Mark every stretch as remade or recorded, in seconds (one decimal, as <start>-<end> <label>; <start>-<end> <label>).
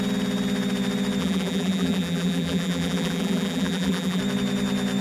0.0-1.2 recorded; 1.2-4.2 remade; 4.2-5.0 recorded